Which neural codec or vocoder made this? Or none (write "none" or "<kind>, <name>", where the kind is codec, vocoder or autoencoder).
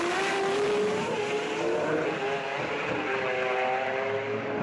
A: none